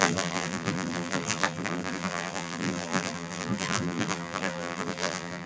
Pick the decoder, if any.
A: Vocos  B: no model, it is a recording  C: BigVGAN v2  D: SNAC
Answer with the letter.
C